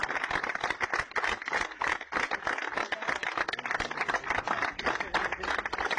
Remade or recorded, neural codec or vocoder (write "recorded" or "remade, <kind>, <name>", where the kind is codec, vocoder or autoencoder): recorded